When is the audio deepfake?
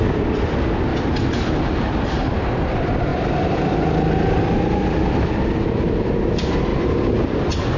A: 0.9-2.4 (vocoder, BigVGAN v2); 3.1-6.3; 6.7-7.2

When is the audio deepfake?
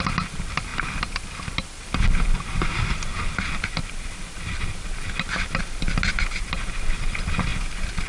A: none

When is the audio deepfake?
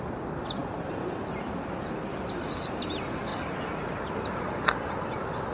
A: none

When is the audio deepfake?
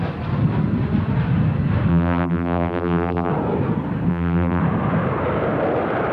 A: 1.9-3.3 (vocoder, BigVGAN v2); 4.1-4.6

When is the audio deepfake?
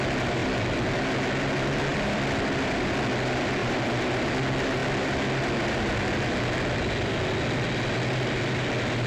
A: 1.9-3.0 (vocoder, BigVGAN v2); 3.6-4.3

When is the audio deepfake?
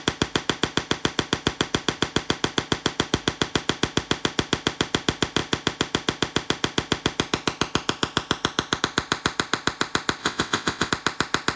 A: 10.2-10.9 (vocoder, WaveNeXt)